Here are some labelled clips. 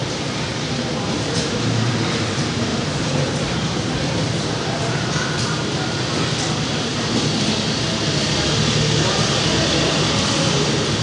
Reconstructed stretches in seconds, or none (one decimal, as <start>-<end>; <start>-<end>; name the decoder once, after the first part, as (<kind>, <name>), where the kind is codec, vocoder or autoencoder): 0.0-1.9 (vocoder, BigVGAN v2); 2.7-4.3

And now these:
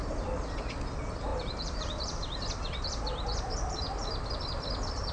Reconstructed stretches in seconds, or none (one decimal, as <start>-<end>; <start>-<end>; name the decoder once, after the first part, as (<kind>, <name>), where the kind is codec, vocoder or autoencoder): 0.0-5.1 (vocoder, BigVGAN v2)

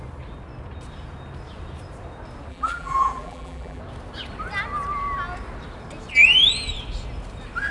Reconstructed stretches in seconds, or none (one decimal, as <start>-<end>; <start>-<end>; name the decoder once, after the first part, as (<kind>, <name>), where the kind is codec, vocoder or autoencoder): 2.5-3.8 (vocoder, BigVGAN v2)

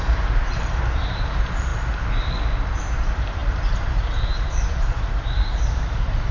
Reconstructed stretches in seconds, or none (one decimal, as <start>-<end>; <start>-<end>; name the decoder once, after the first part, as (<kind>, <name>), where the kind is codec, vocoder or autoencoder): 0.0-1.7 (vocoder, BigVGAN v2); 2.8-6.3